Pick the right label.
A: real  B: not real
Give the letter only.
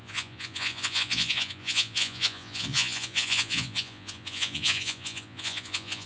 B